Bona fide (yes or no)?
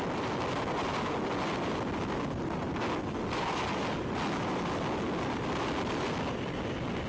yes